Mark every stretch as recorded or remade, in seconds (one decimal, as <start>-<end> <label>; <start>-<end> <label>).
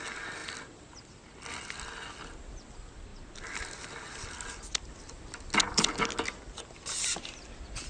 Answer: 0.0-7.9 recorded